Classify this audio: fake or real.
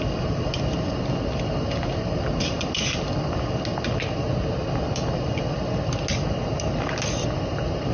real